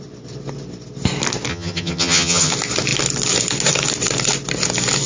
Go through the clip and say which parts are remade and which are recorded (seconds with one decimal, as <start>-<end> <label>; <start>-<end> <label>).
0.0-1.5 recorded; 1.5-2.5 remade; 2.5-5.1 recorded